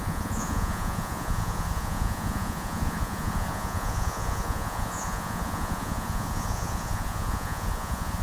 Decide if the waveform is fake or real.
fake